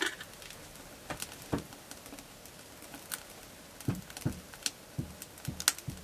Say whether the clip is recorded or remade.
recorded